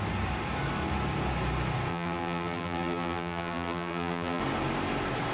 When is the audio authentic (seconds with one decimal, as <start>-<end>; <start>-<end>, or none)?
0.0-1.9; 4.4-5.3